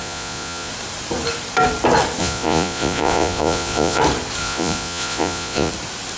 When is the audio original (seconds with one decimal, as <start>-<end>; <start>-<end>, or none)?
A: 0.7-2.2; 4.0-4.4; 5.7-6.2